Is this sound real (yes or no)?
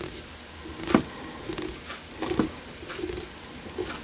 yes